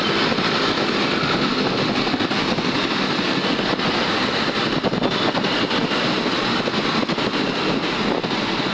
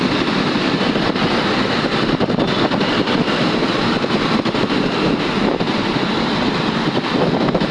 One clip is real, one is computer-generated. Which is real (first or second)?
first